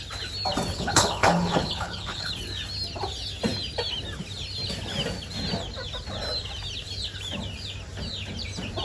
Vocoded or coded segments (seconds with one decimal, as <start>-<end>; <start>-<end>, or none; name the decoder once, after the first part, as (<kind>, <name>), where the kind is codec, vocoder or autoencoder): 0.7-2.3 (codec, HILCodec)